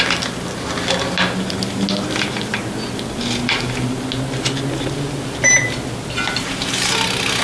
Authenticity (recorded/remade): recorded